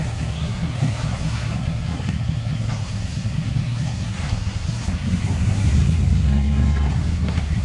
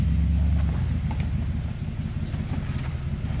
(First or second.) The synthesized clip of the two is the first